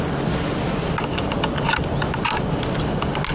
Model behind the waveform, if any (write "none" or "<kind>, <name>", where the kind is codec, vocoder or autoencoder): none